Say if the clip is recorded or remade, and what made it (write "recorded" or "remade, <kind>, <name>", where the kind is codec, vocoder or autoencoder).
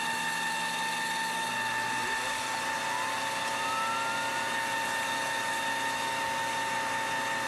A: recorded